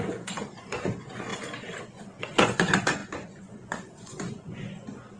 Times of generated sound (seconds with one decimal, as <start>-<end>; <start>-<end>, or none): 0.0-1.3; 1.8-5.2